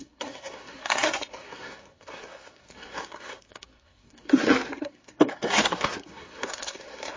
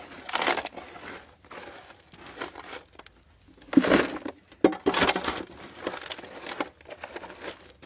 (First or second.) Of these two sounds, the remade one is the first